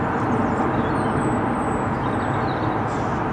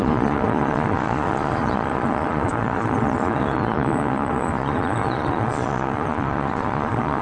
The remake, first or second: second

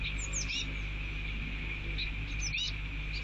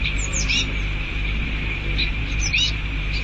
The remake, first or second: second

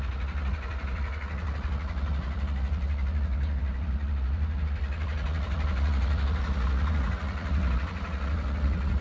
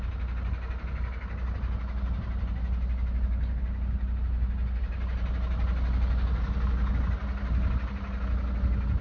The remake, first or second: first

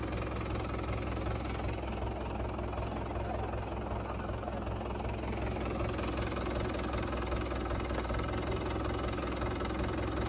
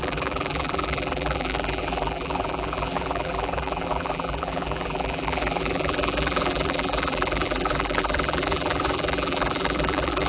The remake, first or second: second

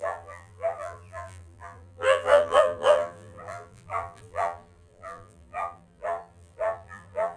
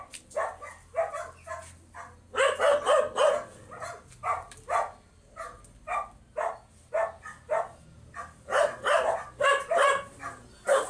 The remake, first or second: first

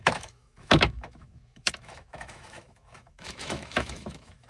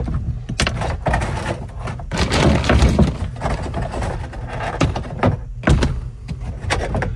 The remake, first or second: first